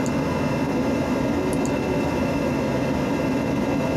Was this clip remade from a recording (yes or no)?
no